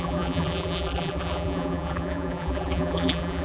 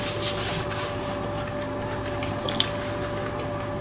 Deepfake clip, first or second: first